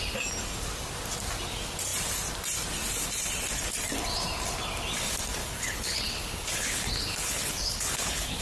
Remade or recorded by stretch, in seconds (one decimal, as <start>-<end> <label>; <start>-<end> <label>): 0.0-5.4 recorded; 5.4-8.4 remade